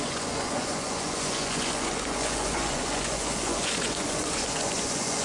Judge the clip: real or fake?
fake